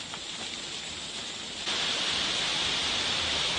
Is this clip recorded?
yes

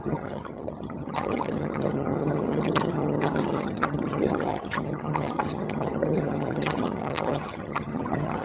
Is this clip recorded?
no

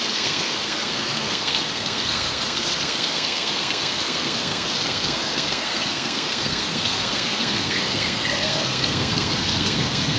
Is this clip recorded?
no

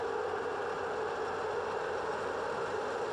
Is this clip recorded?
yes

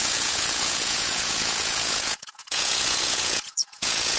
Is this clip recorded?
no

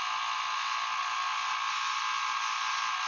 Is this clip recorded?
yes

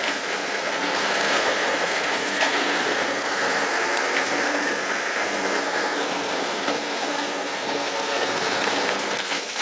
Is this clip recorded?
no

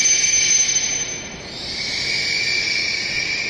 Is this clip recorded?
yes